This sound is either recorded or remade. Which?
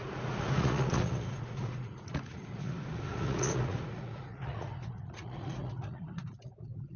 remade